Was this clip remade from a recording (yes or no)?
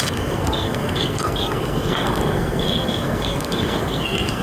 yes